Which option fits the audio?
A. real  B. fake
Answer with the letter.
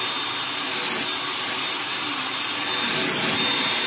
A